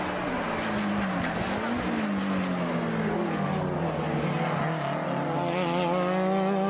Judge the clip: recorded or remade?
recorded